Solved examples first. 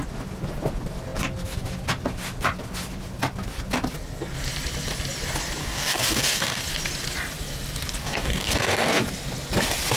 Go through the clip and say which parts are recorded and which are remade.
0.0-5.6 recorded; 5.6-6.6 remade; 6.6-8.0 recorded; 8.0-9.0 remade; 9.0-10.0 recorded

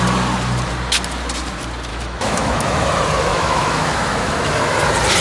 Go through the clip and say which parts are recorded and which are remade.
0.0-1.9 recorded; 1.9-2.9 remade; 2.9-3.3 recorded; 3.3-4.5 remade; 4.5-5.2 recorded

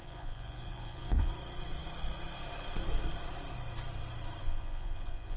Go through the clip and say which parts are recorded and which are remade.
0.0-1.3 remade; 1.3-4.4 recorded; 4.4-5.4 remade

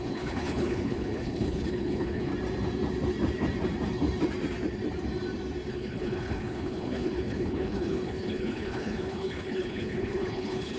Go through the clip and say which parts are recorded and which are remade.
0.0-2.3 remade; 2.3-5.7 recorded; 5.7-10.8 remade

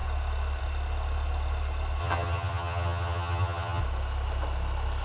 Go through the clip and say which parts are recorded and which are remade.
0.0-2.0 recorded; 2.0-3.8 remade; 3.8-5.0 recorded

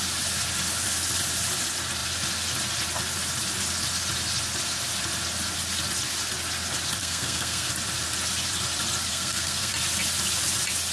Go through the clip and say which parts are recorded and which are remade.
0.0-7.0 recorded; 7.0-7.7 remade; 7.7-9.1 recorded; 9.1-9.7 remade; 9.7-10.9 recorded

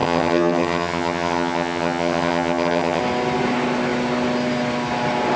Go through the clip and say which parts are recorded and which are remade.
0.0-3.0 remade; 3.0-5.4 recorded

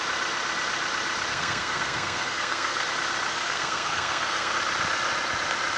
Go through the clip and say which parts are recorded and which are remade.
0.0-1.3 recorded; 1.3-2.9 remade; 2.9-3.3 recorded; 3.3-4.5 remade; 4.5-5.8 recorded